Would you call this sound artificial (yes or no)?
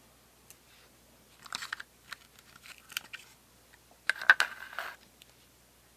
no